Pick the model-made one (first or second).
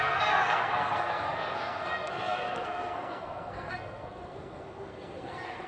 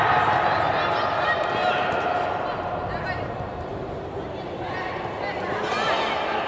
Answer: first